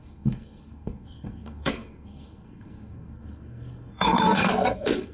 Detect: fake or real fake